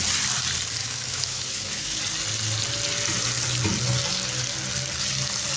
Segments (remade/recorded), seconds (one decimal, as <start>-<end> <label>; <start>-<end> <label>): 0.0-0.8 recorded; 0.8-2.0 remade; 2.0-5.6 recorded